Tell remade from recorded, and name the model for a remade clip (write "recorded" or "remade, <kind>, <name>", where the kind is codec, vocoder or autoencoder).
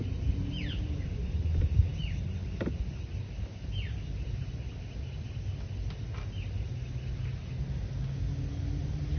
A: recorded